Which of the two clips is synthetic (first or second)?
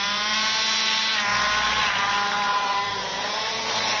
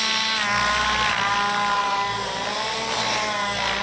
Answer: first